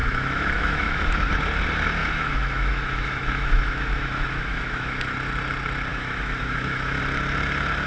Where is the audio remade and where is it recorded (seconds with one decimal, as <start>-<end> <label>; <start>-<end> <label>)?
0.0-1.3 remade; 1.3-2.0 recorded; 2.0-5.0 remade; 5.0-5.9 recorded; 5.9-7.0 remade; 7.0-7.9 recorded